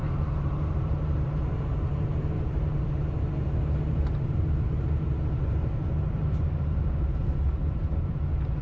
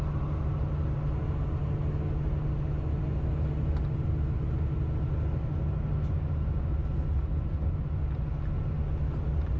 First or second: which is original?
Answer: second